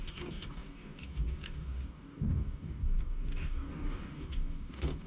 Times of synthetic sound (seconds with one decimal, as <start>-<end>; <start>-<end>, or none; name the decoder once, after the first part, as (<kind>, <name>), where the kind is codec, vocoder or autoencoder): 0.0-5.1 (codec, DAC)